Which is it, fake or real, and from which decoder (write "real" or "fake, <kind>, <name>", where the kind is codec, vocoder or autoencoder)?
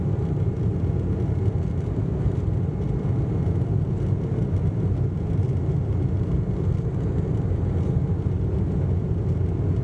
real